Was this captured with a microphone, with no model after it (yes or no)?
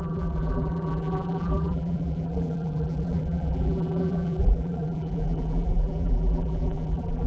no